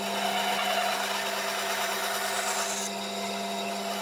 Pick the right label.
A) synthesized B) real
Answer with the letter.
B